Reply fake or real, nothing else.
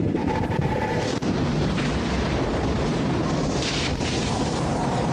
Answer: fake